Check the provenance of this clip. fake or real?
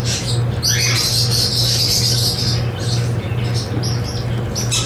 real